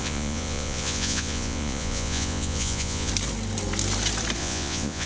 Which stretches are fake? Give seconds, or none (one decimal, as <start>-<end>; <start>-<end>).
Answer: 0.0-3.1; 4.4-5.1